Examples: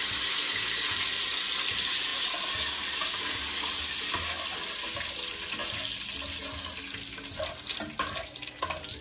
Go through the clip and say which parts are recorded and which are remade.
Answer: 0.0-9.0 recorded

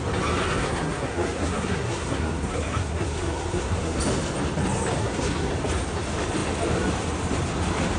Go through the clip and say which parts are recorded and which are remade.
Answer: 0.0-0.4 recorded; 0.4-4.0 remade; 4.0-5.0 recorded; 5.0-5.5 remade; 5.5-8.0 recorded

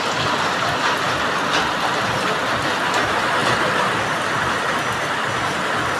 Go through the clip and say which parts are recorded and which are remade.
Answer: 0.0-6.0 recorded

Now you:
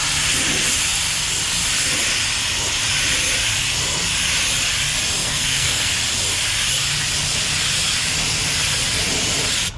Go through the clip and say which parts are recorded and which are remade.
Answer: 0.0-5.2 recorded; 5.2-5.9 remade; 5.9-9.8 recorded